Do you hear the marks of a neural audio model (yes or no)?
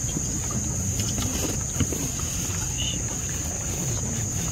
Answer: no